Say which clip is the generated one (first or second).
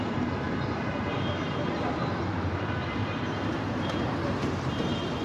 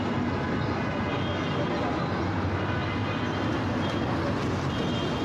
first